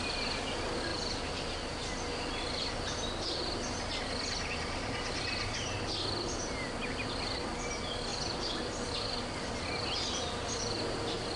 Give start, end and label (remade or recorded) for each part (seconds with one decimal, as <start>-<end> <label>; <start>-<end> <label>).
0.0-11.4 recorded